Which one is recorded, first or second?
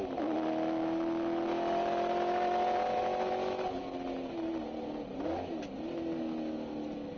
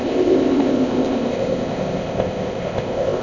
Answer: first